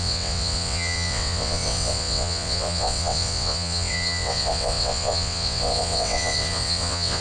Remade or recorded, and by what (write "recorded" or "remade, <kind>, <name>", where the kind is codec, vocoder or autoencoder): remade, vocoder, WaveNeXt